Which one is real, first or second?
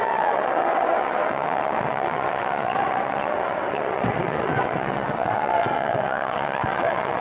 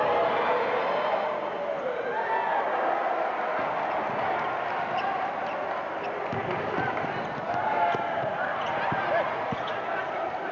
second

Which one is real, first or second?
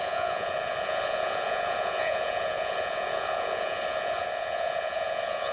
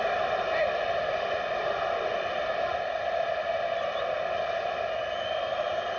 second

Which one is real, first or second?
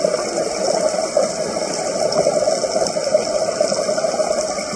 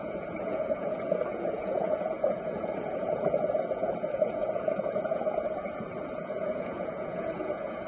first